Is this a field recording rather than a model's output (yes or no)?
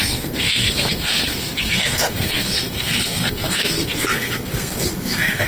no